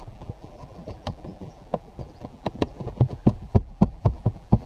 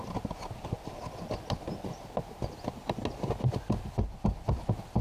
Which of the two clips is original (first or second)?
second